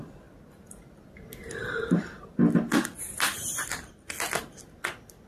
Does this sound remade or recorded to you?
recorded